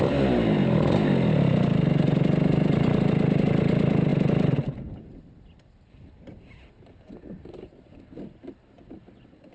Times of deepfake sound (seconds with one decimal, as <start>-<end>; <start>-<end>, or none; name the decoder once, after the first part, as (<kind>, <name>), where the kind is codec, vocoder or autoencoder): none